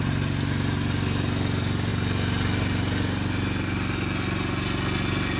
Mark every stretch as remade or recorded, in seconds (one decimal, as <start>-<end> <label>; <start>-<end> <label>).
0.0-5.4 recorded